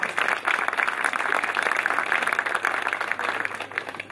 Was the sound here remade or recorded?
recorded